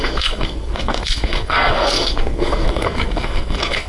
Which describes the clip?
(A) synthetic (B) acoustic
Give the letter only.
A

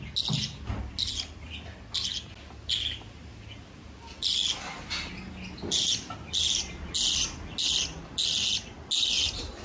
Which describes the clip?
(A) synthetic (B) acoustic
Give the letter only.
B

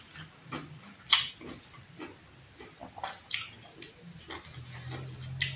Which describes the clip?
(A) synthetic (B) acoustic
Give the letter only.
B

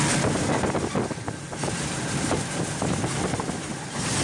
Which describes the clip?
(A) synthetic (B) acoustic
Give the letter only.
B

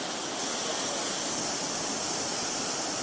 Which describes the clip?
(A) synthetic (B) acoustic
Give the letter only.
B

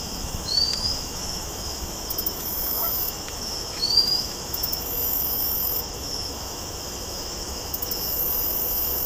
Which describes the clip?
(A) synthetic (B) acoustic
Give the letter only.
A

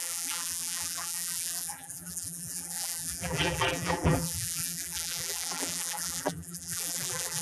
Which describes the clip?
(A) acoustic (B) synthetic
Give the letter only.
B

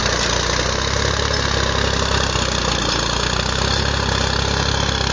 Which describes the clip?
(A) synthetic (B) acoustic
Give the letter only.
B